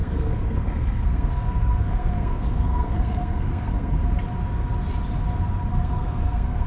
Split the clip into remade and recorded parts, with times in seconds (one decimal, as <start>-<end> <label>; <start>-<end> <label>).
0.0-4.0 remade; 4.0-5.7 recorded; 5.7-6.7 remade